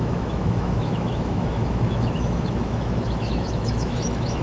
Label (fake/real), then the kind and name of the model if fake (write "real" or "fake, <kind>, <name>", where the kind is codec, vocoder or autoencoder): fake, autoencoder, DAC-VAE